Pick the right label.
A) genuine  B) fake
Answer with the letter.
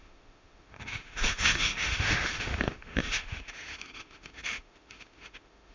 B